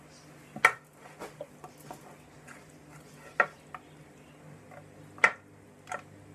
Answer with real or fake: real